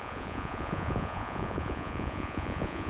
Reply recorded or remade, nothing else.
remade